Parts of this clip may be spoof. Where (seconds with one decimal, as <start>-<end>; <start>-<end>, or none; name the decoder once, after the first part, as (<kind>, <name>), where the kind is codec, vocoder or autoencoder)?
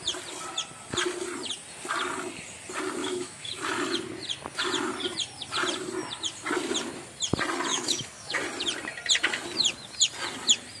3.0-3.5 (autoencoder, DAC-VAE); 7.7-8.4